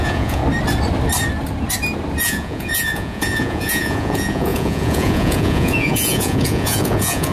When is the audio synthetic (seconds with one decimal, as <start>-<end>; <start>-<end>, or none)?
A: 0.0-0.4; 2.2-7.3